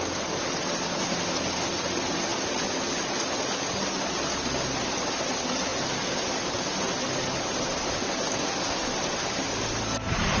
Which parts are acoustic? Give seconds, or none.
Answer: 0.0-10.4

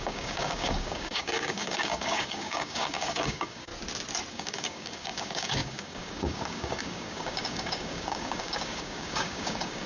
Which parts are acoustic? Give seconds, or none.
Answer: 3.7-4.3

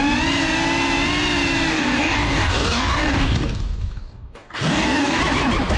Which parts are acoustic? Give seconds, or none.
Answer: 0.0-1.7; 5.2-5.8

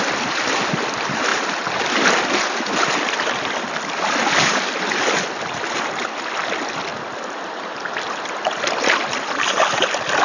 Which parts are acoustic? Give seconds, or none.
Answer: 0.0-10.2